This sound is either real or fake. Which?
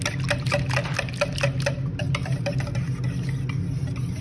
real